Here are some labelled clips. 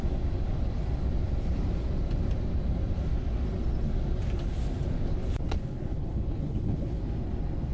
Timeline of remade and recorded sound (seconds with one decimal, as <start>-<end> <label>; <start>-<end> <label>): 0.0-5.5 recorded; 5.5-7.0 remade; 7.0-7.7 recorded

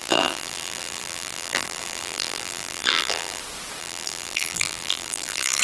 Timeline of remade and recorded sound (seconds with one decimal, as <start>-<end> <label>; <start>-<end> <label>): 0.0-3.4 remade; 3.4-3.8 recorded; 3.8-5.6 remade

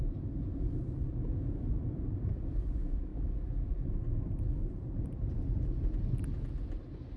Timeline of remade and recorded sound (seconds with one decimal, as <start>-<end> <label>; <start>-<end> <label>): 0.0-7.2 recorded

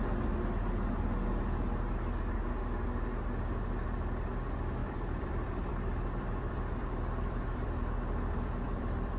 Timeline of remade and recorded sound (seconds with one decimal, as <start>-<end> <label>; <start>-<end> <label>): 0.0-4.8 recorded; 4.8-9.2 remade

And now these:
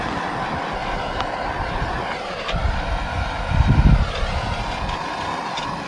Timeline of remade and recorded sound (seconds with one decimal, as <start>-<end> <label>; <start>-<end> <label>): 0.0-5.9 recorded

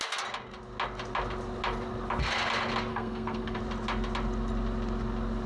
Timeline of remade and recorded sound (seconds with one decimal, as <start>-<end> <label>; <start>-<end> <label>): 0.0-2.9 recorded; 2.9-3.6 remade; 3.6-5.5 recorded